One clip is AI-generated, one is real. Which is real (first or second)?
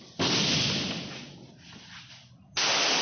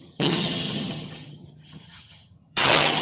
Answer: first